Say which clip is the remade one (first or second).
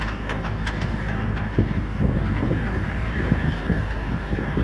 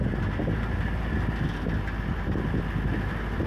first